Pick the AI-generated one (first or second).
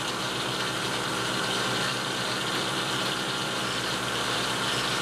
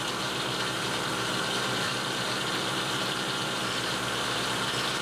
second